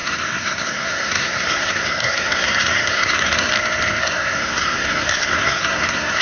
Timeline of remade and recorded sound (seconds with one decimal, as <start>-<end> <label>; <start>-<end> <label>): 0.0-3.5 remade; 3.5-4.0 recorded; 4.0-6.2 remade